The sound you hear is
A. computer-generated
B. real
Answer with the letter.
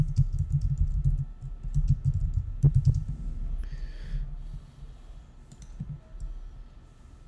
B